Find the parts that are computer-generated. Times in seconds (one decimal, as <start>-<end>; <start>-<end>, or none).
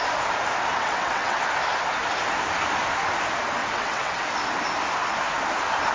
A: 0.7-1.4; 3.6-4.2